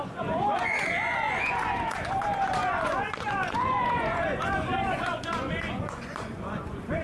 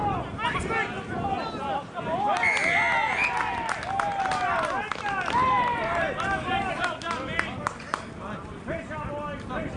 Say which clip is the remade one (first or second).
first